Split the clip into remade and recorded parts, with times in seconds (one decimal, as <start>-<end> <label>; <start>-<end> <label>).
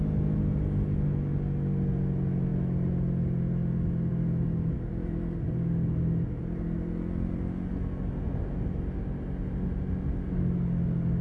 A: 0.0-11.2 recorded